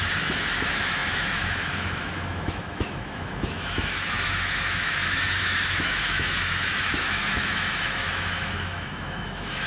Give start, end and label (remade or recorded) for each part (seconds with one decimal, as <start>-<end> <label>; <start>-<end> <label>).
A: 0.0-9.7 remade